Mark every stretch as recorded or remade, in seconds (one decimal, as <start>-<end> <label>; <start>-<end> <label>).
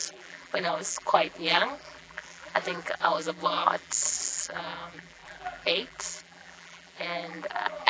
0.0-7.9 remade